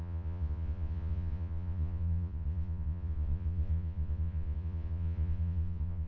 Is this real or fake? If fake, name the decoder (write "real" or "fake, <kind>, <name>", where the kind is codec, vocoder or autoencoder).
fake, vocoder, Vocos